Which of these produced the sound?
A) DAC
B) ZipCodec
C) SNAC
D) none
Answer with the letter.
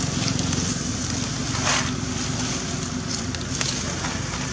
D